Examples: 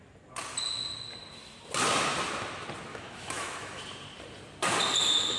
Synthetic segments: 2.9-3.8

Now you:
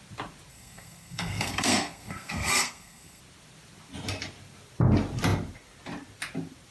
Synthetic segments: 0.5-3.2

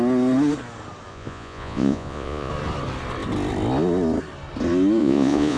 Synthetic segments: 1.1-2.5; 5.0-5.6

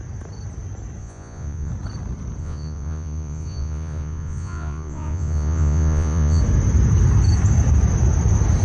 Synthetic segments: 1.0-1.7; 2.4-6.4

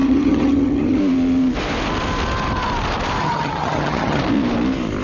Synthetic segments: 0.0-1.0; 3.2-4.2

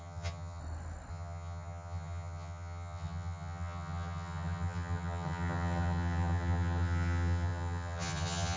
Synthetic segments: 0.0-0.6; 1.1-8.6

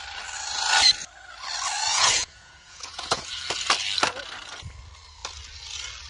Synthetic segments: 1.9-3.2